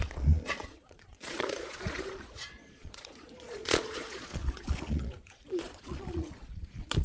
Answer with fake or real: fake